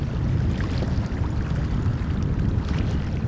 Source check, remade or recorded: recorded